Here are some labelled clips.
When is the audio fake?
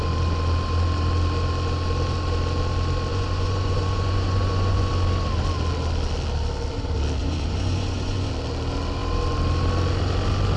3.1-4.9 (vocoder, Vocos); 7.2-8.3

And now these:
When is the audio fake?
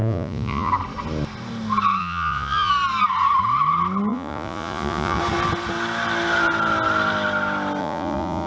0.0-0.7 (vocoder, Vocos); 2.0-2.7; 4.1-5.2; 7.8-8.5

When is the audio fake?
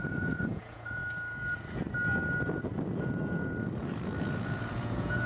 0.0-1.0 (vocoder, Vocos); 4.2-5.3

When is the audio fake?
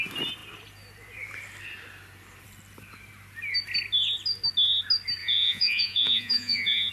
5.2-6.9 (vocoder, Vocos)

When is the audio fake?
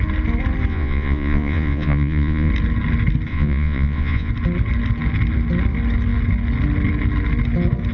0.7-2.5 (vocoder, Vocos); 3.3-4.3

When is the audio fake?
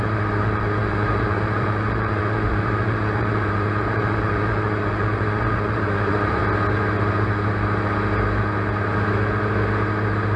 0.0-6.4 (vocoder, Vocos)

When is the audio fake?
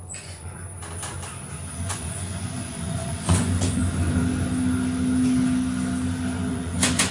0.0-0.6 (vocoder, Vocos); 1.7-3.8; 6.5-7.1